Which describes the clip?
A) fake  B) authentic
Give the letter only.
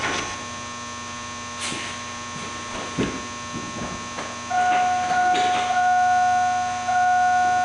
B